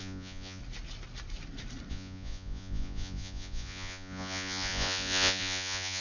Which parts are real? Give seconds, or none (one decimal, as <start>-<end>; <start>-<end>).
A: 0.6-1.9

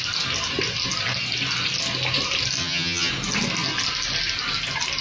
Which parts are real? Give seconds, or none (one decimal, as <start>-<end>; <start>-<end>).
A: 0.0-2.6; 3.1-5.0

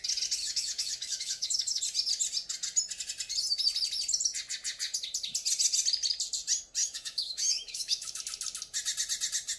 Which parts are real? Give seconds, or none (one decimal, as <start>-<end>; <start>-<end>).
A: 0.0-0.4; 1.8-6.8; 8.2-9.6

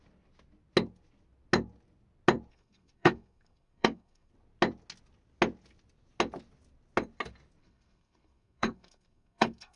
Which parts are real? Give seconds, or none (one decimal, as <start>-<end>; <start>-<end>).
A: 0.0-2.5; 4.3-7.6

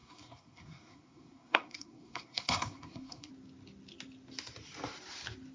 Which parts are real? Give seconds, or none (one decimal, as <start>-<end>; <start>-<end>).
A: 3.3-5.5